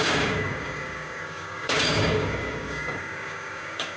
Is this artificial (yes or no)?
yes